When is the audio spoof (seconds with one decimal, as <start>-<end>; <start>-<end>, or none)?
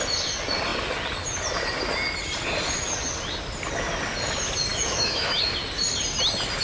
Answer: 4.7-5.4